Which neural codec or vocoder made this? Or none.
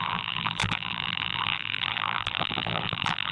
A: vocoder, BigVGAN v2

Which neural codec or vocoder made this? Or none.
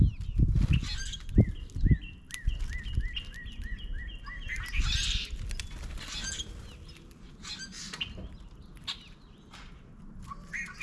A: none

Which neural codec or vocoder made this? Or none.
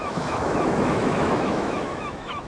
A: autoencoder, DAC-VAE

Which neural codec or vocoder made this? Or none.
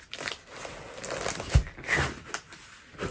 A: none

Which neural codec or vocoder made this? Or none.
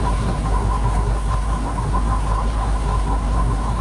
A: codec, SNAC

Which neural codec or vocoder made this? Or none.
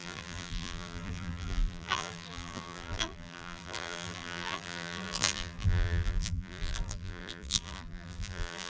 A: vocoder, BigVGAN v2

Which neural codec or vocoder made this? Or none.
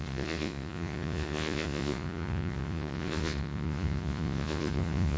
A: vocoder, Vocos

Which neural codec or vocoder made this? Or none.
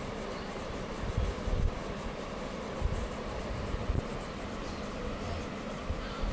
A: vocoder, BigVGAN v2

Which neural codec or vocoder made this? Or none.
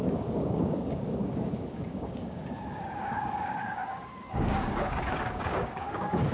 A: codec, DAC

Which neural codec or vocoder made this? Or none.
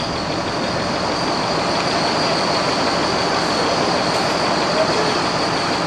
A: none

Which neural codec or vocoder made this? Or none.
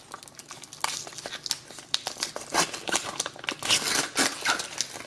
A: none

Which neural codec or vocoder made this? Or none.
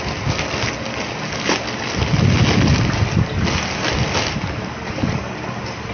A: none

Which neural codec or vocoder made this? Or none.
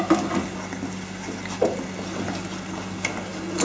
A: none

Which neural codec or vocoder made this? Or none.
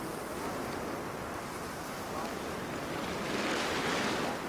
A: none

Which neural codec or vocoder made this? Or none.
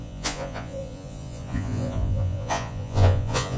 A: vocoder, Vocos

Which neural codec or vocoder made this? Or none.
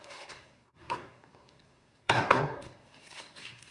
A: codec, SNAC